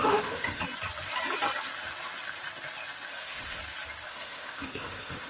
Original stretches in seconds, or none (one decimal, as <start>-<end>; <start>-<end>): 0.6-3.1; 3.6-4.1